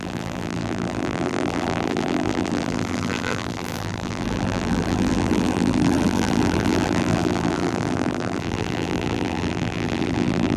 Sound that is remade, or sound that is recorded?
remade